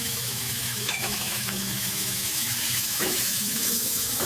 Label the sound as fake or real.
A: fake